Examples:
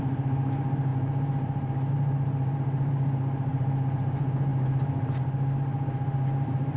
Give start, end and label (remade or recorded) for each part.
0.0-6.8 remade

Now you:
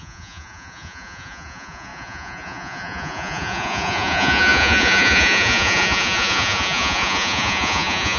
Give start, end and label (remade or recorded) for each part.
0.0-8.2 remade

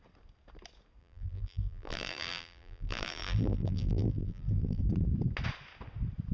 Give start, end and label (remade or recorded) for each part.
0.0-1.0 recorded; 1.0-4.8 remade; 4.8-6.3 recorded

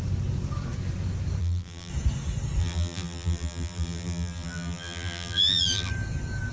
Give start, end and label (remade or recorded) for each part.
0.0-1.4 recorded; 1.4-1.9 remade; 1.9-2.6 recorded; 2.6-5.9 remade; 5.9-6.5 recorded